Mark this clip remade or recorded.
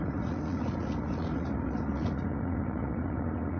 remade